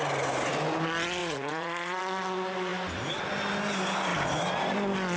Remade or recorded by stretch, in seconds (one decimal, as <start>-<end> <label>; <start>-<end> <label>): 0.0-1.2 recorded; 1.2-2.0 remade; 2.0-5.2 recorded